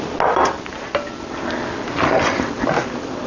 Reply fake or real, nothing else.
real